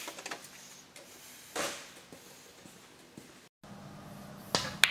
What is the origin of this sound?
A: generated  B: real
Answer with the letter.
B